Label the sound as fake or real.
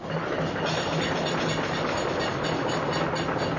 real